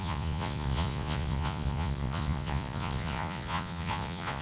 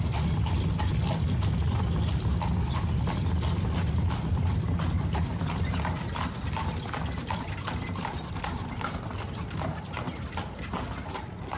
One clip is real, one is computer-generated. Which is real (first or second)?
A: second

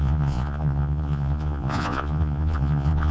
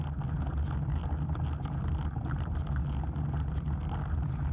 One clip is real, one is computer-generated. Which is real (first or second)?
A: second